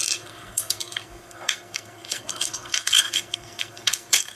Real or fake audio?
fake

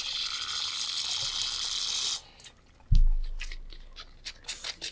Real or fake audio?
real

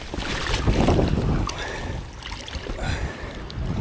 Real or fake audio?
real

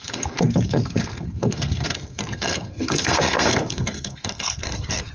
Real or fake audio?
fake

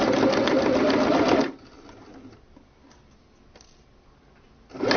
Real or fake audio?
real